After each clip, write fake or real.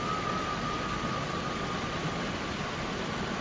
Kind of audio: real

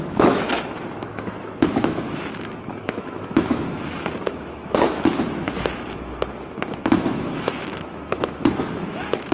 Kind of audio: fake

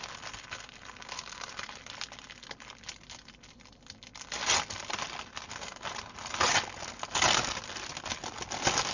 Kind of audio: real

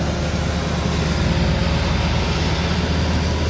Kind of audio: real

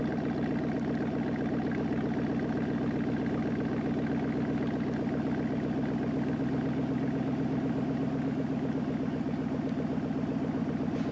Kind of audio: real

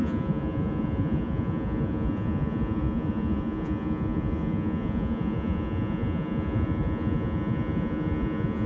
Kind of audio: fake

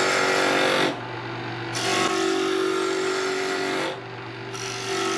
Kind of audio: real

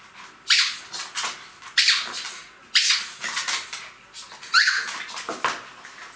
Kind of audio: real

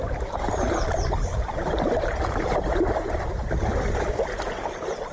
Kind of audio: fake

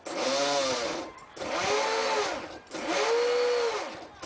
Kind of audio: real